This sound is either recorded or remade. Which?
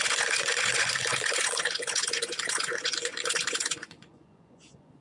remade